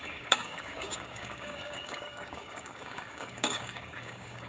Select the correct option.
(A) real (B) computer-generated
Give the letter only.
B